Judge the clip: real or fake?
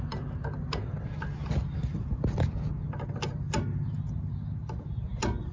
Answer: real